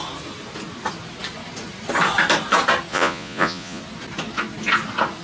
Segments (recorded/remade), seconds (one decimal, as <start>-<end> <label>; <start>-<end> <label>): 0.0-2.9 recorded; 2.9-3.8 remade; 3.8-5.2 recorded